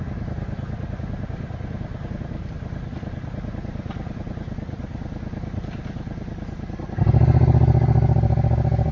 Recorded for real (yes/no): yes